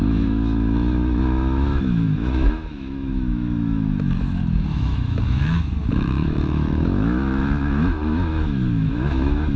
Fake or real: fake